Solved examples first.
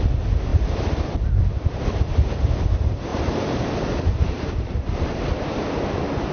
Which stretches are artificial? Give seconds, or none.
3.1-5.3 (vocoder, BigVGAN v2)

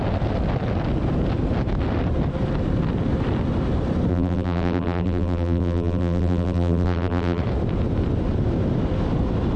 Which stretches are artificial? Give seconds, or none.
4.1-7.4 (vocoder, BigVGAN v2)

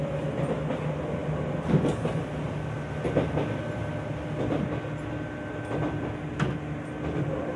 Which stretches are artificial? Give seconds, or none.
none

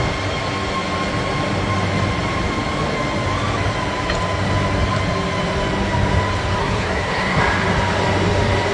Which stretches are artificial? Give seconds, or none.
6.6-7.4 (codec, SNAC)